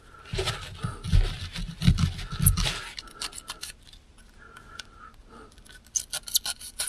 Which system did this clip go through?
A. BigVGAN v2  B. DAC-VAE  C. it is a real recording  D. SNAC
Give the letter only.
C